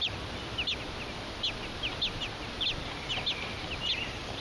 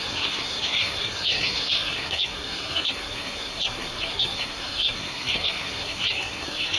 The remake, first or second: second